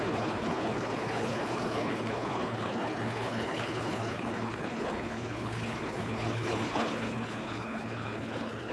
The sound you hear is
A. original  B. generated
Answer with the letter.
B